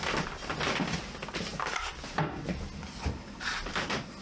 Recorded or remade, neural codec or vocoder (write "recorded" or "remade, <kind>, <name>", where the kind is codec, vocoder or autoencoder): recorded